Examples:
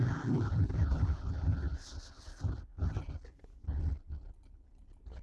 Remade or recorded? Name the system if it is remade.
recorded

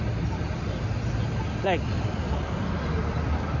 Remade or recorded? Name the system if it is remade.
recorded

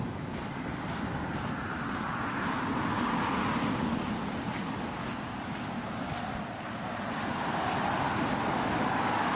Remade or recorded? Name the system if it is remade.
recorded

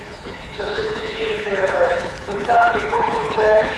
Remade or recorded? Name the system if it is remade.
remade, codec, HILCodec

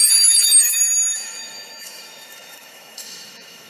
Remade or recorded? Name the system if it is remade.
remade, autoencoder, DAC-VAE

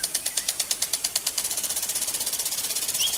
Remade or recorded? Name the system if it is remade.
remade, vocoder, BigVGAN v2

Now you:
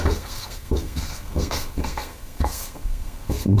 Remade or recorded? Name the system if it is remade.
remade, codec, SNAC